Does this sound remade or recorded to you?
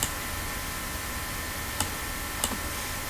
recorded